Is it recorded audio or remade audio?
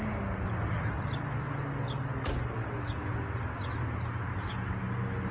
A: recorded